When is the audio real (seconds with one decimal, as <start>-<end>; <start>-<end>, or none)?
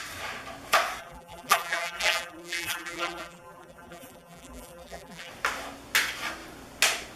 0.0-1.0; 5.3-7.2